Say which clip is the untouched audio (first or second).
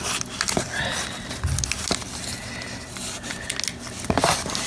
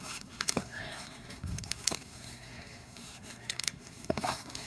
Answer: first